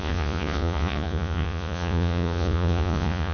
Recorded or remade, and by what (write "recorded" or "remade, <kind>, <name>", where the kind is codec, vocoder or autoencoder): remade, vocoder, Vocos